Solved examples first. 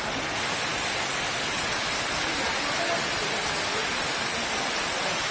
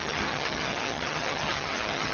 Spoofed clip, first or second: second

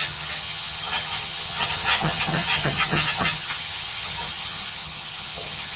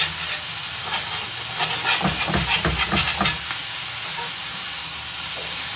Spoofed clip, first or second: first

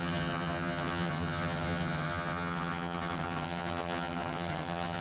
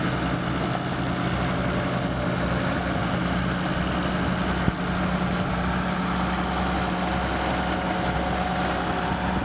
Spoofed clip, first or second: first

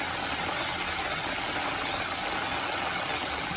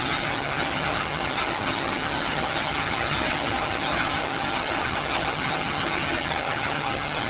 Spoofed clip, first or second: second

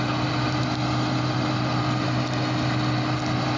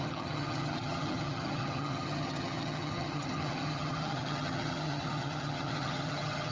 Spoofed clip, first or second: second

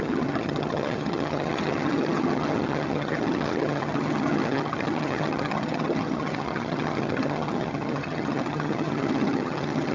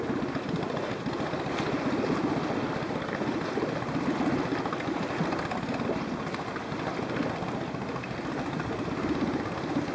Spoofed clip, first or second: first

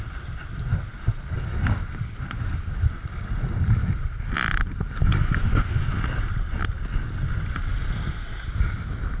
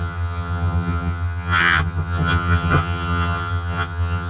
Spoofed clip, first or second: second